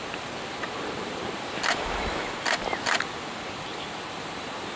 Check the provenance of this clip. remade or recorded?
remade